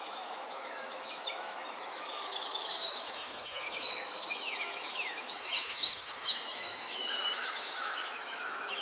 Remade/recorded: remade